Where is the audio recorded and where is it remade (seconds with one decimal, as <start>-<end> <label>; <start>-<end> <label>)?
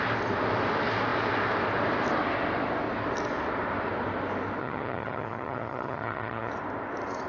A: 0.0-4.6 recorded; 4.6-6.5 remade; 6.5-7.3 recorded